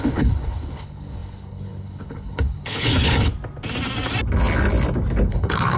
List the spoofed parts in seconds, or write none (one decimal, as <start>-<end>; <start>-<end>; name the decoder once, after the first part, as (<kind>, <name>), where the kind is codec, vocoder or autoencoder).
0.0-3.3 (codec, HILCodec); 5.3-5.8